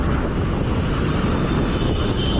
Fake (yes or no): no